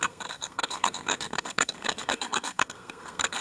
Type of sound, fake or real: fake